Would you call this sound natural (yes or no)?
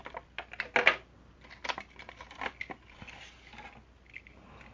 yes